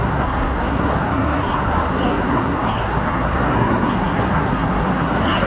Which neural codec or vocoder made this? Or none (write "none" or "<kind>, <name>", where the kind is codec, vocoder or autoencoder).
codec, SNAC